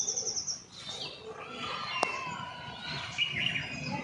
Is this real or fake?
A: real